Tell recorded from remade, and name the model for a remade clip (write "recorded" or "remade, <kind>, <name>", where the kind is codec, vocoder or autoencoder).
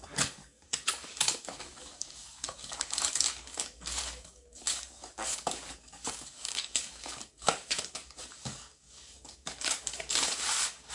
remade, codec, DAC